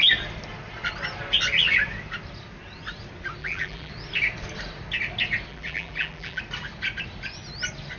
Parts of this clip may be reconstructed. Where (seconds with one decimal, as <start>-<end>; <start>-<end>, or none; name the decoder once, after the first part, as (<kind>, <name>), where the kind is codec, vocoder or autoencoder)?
3.4-3.9 (vocoder, BigVGAN v2); 5.5-6.4